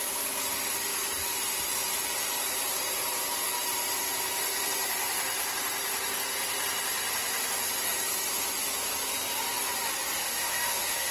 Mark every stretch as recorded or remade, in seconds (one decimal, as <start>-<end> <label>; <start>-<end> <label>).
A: 0.0-10.2 recorded; 10.2-11.1 remade